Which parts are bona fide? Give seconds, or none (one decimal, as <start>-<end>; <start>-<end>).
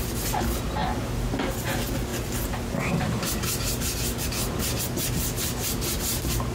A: 0.8-1.5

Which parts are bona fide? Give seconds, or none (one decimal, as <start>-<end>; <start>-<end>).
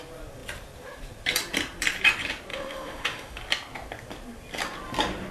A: 0.0-2.5; 3.4-5.3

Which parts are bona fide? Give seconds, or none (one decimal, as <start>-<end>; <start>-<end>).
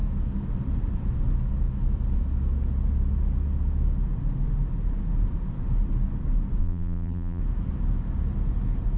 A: 0.0-6.6; 7.4-9.0